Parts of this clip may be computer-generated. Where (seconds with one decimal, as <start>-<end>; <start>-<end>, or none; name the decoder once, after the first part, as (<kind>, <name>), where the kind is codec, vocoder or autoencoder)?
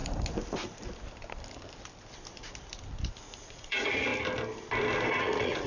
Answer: 3.4-4.1 (vocoder, Vocos); 5.2-5.7